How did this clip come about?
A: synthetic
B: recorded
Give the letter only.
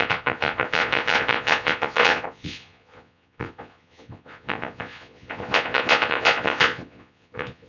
A